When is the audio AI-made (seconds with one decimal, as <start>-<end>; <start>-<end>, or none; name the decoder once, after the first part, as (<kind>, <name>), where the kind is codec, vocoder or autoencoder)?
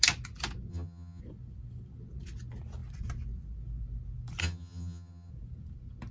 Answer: 0.7-1.2 (vocoder, HiFi-GAN); 4.4-5.3